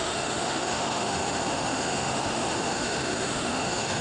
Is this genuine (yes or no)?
no